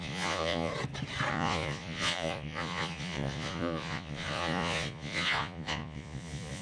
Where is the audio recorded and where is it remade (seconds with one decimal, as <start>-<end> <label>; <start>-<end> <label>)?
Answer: 0.0-0.7 remade; 0.7-1.3 recorded; 1.3-6.6 remade